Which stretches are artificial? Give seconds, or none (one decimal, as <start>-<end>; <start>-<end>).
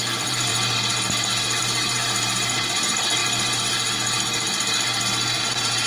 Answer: 0.0-0.5; 1.6-3.2; 5.4-5.9